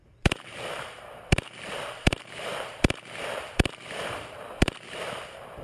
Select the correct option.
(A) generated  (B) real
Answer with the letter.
A